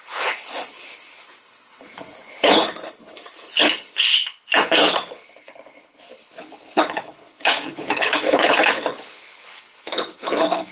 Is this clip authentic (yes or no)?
no